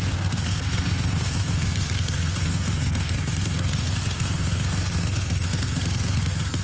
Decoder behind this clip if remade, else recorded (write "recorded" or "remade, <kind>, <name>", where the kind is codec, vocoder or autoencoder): remade, codec, SNAC